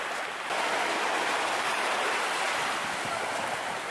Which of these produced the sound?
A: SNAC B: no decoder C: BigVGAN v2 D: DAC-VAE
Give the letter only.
B